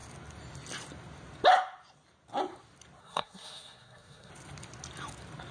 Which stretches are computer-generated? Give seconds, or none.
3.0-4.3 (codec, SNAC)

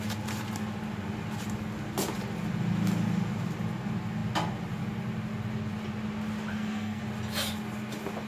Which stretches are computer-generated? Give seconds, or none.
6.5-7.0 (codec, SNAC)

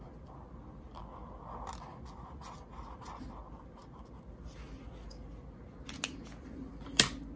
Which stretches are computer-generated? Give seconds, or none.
none

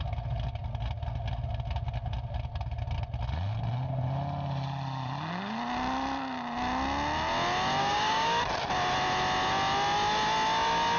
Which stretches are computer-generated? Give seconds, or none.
7.8-8.4 (codec, DAC)